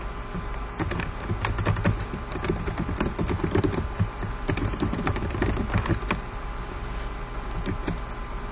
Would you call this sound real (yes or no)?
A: yes